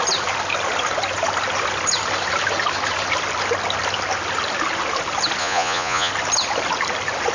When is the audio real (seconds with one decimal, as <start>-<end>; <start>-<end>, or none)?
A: 0.0-5.4; 6.1-7.3